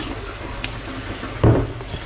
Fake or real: real